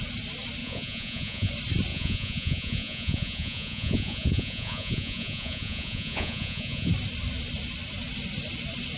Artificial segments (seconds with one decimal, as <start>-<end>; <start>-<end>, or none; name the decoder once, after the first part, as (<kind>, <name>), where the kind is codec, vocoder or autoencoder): 0.6-1.5 (vocoder, Vocos); 1.9-6.9